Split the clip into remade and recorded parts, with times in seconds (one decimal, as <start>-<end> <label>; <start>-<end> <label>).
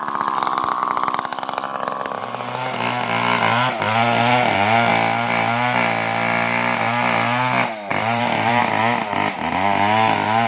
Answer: 0.0-7.9 recorded; 7.9-8.6 remade; 8.6-10.5 recorded